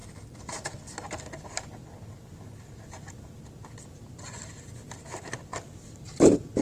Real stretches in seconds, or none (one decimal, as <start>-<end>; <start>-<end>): 0.0-6.6

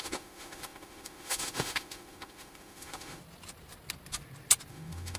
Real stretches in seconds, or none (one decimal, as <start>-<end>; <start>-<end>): 3.2-4.7

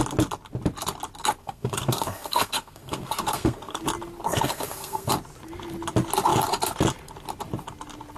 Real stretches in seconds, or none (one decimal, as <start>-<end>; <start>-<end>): 0.0-1.4; 3.8-4.3; 5.1-8.2

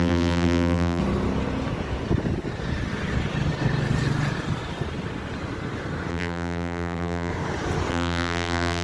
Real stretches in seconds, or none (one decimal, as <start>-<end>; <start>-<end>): 1.0-6.1; 7.3-7.9